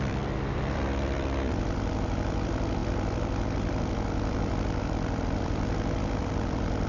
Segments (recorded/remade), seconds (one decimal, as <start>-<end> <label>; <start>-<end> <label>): 0.0-6.9 remade